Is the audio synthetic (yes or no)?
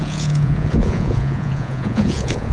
yes